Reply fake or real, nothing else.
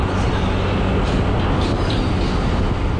real